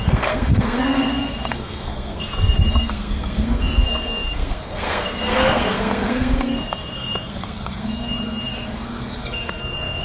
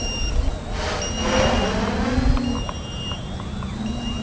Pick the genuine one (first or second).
second